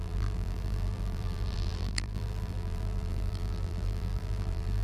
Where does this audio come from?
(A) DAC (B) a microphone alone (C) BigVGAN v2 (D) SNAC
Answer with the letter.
C